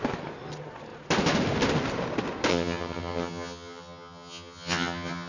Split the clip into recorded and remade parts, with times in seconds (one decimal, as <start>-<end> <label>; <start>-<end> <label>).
0.0-2.5 recorded; 2.5-5.3 remade